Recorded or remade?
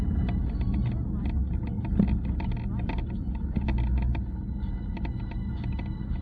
recorded